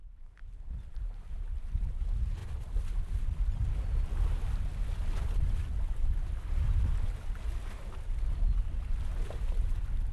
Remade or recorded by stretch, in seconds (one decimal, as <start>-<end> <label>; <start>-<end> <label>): 0.0-1.3 remade; 1.3-10.1 recorded